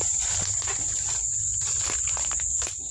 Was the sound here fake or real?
real